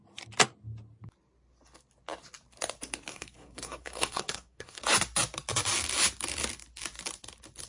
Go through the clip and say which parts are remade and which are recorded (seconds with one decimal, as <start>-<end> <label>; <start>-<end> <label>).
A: 0.0-3.1 recorded; 3.1-4.8 remade; 4.8-7.7 recorded

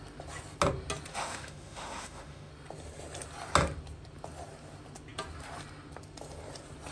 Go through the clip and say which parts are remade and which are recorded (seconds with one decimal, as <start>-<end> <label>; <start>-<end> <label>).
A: 0.0-1.1 recorded; 1.1-2.5 remade; 2.5-6.9 recorded

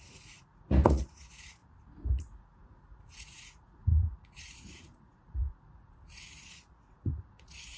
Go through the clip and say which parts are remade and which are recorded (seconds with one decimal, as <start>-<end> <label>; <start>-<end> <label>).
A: 0.0-1.6 remade; 1.6-2.2 recorded; 2.2-7.8 remade

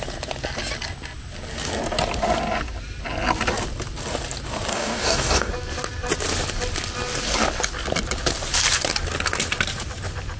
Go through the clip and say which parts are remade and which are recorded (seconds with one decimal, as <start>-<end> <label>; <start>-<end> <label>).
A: 0.0-4.7 recorded; 4.7-5.5 remade; 5.5-10.4 recorded

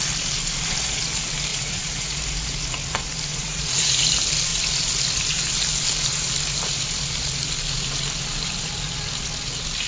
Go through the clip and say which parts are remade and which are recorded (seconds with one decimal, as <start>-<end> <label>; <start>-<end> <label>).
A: 0.0-1.5 recorded; 1.5-2.2 remade; 2.2-3.3 recorded; 3.3-4.0 remade; 4.0-9.9 recorded

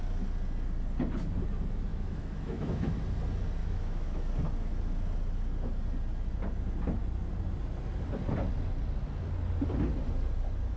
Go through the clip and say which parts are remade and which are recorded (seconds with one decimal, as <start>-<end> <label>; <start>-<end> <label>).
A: 0.0-1.9 recorded; 1.9-2.9 remade; 2.9-3.6 recorded; 3.6-4.3 remade; 4.3-10.8 recorded